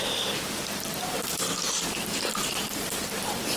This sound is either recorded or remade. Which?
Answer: remade